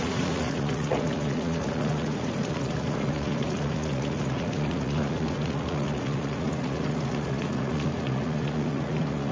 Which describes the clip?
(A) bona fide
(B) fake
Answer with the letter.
B